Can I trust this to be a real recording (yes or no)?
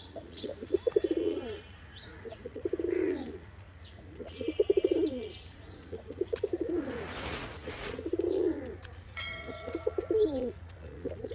no